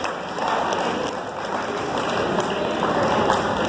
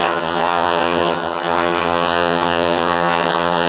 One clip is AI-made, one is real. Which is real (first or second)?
first